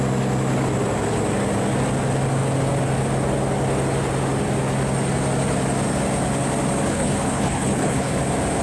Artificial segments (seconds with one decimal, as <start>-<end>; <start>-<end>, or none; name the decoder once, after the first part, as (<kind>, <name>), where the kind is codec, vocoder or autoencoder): 6.9-8.2 (codec, HILCodec)